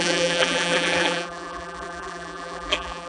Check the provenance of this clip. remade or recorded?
remade